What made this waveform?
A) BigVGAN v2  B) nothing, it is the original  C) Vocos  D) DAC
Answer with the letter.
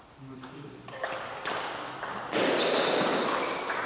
A